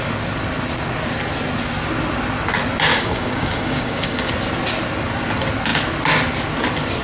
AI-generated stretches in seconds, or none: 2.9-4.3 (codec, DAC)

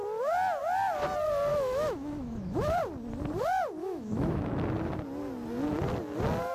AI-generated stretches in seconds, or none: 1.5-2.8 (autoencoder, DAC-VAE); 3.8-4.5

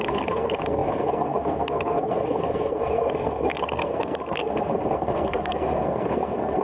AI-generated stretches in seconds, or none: 0.0-6.6 (codec, SNAC)

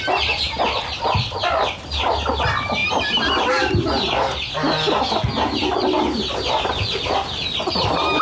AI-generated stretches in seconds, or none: none